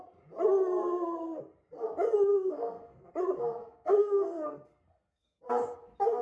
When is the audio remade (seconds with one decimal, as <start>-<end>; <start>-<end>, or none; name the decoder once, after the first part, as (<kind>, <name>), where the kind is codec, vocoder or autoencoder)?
0.8-1.4 (codec, SNAC); 2.3-3.1; 3.6-5.4